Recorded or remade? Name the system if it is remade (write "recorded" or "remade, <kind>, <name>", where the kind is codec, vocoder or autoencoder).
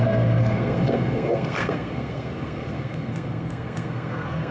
remade, codec, SNAC